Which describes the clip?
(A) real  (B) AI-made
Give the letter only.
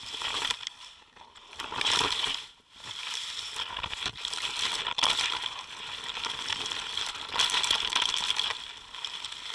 A